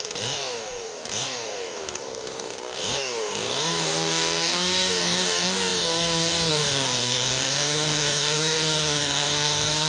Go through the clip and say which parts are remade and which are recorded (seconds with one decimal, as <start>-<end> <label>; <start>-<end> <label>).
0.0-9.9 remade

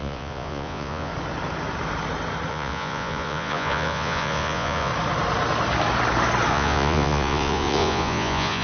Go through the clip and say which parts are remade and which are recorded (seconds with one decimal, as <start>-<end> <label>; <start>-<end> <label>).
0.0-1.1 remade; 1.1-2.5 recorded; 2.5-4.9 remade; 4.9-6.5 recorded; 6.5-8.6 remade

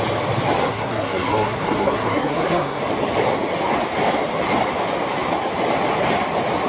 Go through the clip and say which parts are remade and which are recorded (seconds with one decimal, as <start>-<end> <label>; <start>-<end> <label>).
0.0-0.6 recorded; 0.6-2.8 remade; 2.8-6.7 recorded